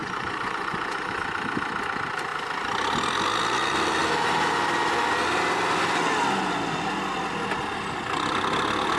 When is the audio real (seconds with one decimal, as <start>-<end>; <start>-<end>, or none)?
1.1-9.0